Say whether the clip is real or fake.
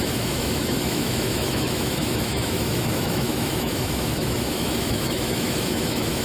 fake